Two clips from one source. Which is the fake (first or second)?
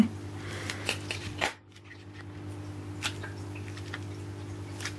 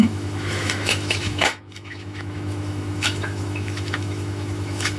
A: second